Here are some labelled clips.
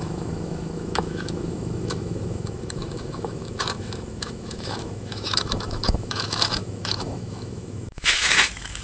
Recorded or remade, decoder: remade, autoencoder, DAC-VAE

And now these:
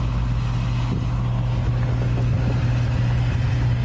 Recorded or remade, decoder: recorded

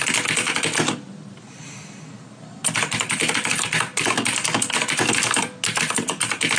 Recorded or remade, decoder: recorded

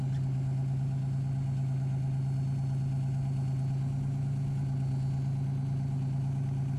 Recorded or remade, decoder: recorded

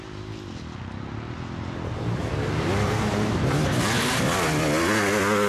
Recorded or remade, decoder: recorded